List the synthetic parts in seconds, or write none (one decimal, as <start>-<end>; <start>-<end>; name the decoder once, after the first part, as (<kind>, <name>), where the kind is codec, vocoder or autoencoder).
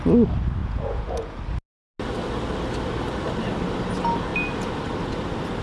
0.6-1.4 (vocoder, Vocos)